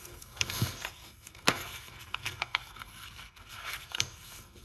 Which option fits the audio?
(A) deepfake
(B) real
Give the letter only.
A